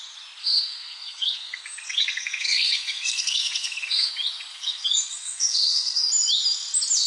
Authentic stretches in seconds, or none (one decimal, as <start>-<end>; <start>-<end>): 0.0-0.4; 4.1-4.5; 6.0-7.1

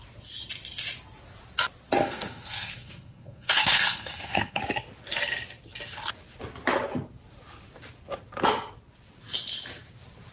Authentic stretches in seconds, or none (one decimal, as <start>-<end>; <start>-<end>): 0.0-2.0; 4.6-10.3

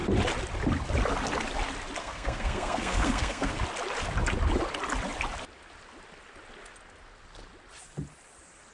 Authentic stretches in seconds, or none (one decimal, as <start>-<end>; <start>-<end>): 0.0-2.0; 3.6-8.7

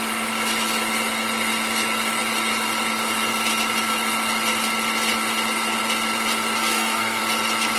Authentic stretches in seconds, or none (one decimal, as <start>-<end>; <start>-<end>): 0.0-6.6; 7.2-7.8

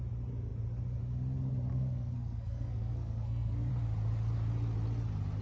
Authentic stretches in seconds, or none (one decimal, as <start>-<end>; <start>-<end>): 0.0-1.7; 3.7-5.4

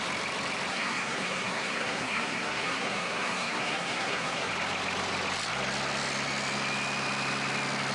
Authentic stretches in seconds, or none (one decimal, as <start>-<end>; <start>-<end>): 0.0-0.7; 4.5-7.9

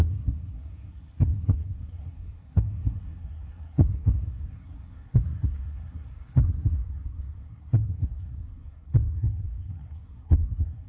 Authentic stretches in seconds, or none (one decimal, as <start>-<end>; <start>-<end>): none